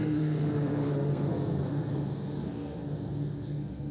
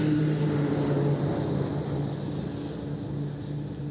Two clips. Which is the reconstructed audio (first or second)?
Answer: first